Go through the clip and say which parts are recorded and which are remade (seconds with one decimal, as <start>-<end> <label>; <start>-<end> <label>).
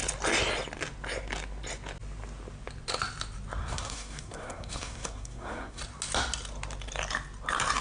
0.0-3.7 recorded; 3.7-5.8 remade; 5.8-7.8 recorded